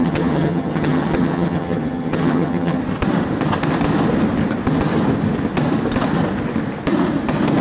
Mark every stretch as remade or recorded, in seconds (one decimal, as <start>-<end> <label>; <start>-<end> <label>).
0.0-2.8 remade; 2.8-7.6 recorded